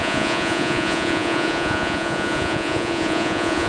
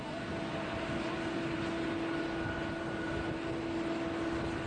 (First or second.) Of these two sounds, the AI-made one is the first